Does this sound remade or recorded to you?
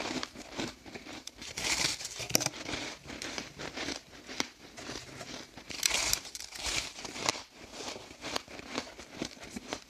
remade